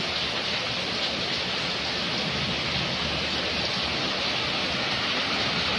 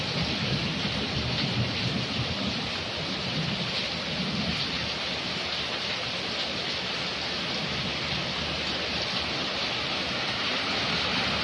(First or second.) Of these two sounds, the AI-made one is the second